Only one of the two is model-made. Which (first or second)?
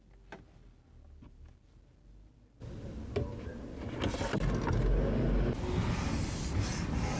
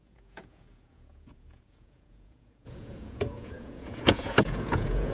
second